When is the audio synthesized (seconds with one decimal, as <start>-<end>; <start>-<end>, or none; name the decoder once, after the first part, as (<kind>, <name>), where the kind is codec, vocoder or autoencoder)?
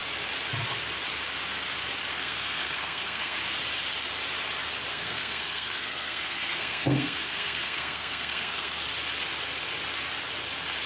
2.1-3.4 (codec, SNAC); 4.9-8.8